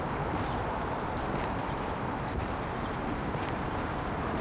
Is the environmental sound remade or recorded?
remade